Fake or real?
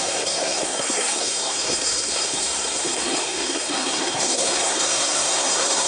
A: fake